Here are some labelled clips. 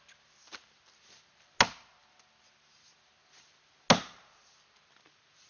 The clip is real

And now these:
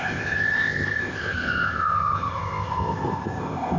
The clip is fake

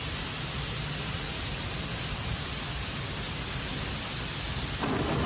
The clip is real